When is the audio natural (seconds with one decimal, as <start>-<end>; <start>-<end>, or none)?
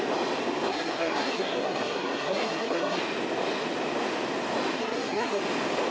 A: 0.0-0.7; 3.0-4.8; 5.4-5.9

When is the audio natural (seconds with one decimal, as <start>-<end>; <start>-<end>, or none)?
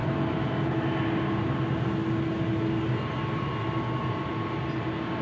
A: 0.0-5.2